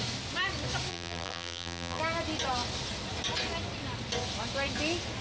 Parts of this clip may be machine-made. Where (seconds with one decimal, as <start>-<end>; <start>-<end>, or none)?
0.9-2.0